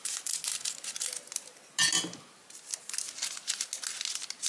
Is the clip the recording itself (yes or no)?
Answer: yes